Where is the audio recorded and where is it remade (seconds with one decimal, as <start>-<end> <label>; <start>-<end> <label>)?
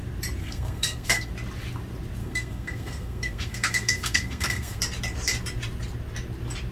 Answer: 0.0-0.4 recorded; 0.4-1.3 remade; 1.3-2.2 recorded; 2.2-4.8 remade; 4.8-6.7 recorded